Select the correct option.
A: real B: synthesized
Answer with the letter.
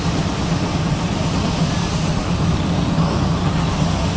A